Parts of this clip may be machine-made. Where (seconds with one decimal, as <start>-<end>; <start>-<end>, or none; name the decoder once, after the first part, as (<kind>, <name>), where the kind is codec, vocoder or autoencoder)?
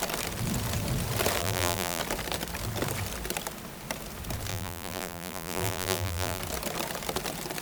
1.4-2.0 (vocoder, BigVGAN v2); 4.5-6.4